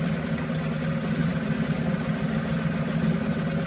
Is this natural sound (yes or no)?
yes